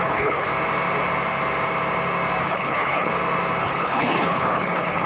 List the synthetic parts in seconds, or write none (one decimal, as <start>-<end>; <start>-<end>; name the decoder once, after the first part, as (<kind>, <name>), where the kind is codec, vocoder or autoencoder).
0.0-0.5 (codec, HILCodec); 2.4-3.1; 3.6-5.1